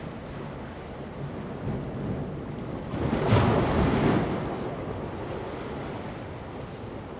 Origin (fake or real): real